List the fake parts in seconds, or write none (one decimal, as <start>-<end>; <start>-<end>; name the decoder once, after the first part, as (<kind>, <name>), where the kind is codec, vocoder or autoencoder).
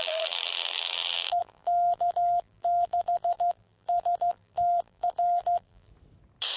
0.0-5.9 (vocoder, BigVGAN v2)